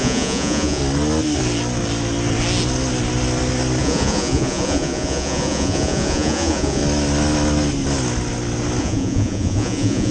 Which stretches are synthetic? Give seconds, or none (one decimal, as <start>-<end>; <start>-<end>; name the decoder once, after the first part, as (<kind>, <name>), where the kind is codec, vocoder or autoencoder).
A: 0.0-0.8 (vocoder, Vocos); 3.8-6.8; 8.8-10.1